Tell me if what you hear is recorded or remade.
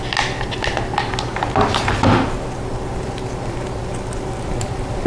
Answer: recorded